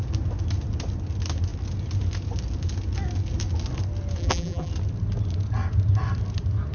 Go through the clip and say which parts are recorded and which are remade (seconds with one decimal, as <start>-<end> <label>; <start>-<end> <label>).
0.0-4.2 recorded; 4.2-4.7 remade; 4.7-6.7 recorded